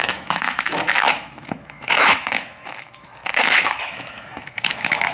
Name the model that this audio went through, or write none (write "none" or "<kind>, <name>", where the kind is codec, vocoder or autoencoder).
autoencoder, DAC-VAE